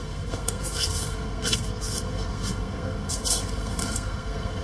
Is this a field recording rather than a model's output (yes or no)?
no